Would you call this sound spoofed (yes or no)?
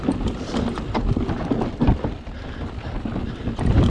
no